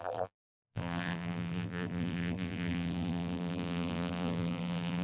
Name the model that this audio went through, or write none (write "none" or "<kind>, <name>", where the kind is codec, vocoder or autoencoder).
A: vocoder, BigVGAN v2